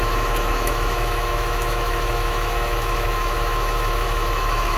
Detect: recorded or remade remade